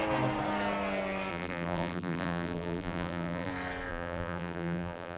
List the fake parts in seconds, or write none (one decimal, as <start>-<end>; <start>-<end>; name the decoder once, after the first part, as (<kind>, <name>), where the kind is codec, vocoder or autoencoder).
1.3-3.5 (vocoder, BigVGAN v2); 3.9-5.2